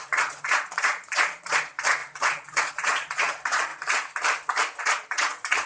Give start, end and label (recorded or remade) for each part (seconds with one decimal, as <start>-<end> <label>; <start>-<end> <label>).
0.0-3.7 remade; 3.7-4.8 recorded; 4.8-5.7 remade